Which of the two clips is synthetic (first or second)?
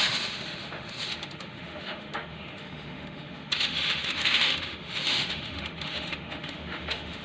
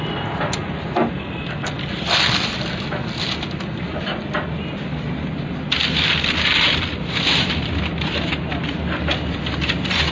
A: first